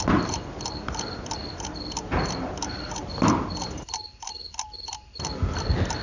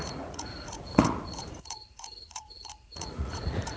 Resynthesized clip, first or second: second